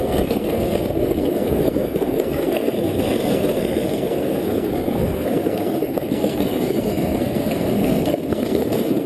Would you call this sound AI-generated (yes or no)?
yes